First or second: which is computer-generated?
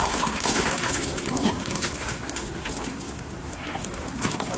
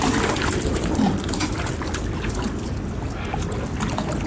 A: first